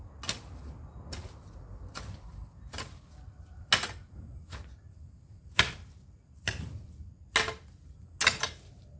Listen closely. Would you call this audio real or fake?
real